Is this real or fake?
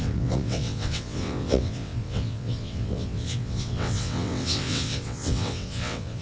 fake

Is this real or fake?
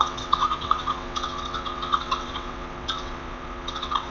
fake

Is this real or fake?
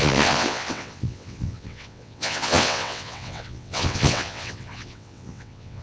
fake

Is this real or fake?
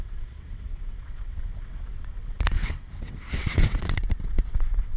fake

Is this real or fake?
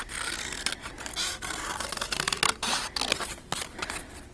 real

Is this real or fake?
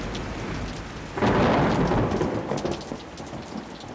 real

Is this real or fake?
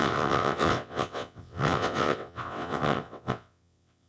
fake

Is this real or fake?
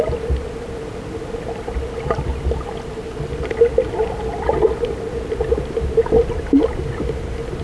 real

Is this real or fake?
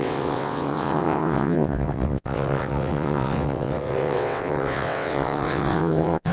fake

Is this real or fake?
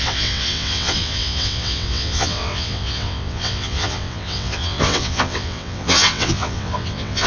fake